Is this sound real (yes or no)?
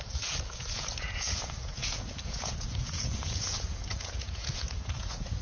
no